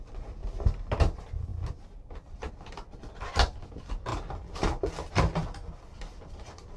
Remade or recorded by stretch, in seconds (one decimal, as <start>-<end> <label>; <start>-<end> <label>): 0.0-6.8 recorded